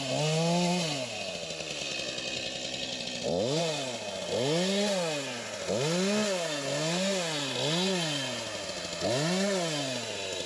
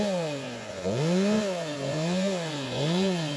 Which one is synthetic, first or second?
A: second